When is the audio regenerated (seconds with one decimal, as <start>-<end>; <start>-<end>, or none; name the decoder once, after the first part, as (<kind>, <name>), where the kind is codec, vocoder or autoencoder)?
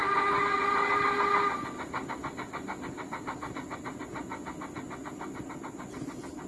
none